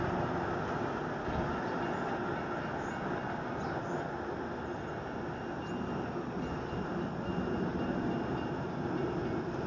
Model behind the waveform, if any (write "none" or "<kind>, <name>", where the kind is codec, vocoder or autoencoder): none